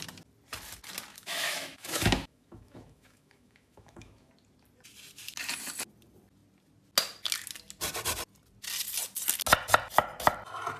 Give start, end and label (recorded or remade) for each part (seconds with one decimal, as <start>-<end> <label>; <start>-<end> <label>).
0.0-1.1 recorded; 1.1-4.3 remade; 4.3-10.8 recorded

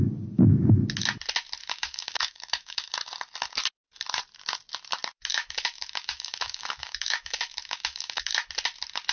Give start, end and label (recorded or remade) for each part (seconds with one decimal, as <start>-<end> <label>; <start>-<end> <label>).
0.0-1.6 recorded; 1.6-2.9 remade; 2.9-5.3 recorded; 5.3-8.3 remade; 8.3-9.1 recorded

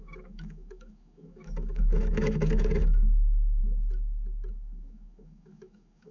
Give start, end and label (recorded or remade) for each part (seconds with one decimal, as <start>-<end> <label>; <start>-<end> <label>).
0.0-3.6 remade; 3.6-4.5 recorded; 4.5-6.1 remade

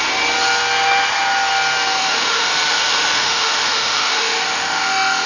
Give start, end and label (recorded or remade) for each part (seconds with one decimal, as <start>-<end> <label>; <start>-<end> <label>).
0.0-2.0 recorded; 2.0-5.3 remade

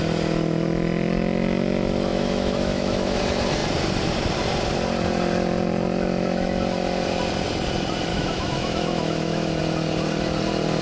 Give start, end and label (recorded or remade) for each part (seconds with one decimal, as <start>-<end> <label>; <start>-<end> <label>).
0.0-2.1 recorded; 2.1-3.2 remade; 3.2-8.1 recorded; 8.1-9.6 remade; 9.6-10.8 recorded

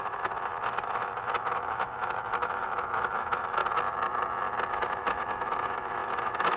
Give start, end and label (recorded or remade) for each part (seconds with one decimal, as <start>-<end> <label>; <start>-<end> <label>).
0.0-3.6 remade; 3.6-4.7 recorded; 4.7-6.6 remade